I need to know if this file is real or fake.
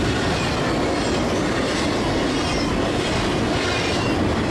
real